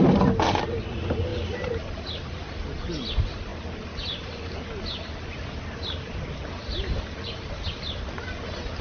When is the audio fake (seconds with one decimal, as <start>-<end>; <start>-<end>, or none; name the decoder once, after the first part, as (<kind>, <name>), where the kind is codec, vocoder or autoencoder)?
none